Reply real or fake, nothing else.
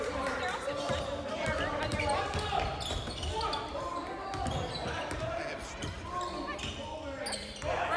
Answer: real